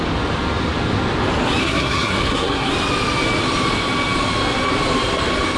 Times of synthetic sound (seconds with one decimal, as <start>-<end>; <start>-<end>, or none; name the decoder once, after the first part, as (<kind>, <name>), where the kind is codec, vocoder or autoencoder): 1.6-2.7 (codec, SNAC)